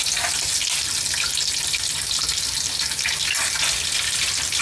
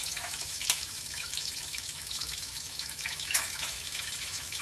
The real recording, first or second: first